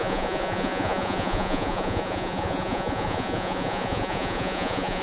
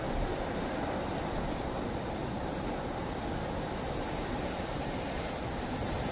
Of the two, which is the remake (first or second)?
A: first